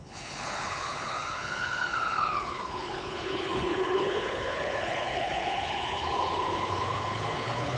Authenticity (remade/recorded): remade